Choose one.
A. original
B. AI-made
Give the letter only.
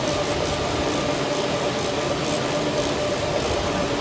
B